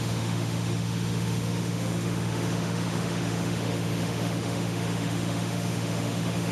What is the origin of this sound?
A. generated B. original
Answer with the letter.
A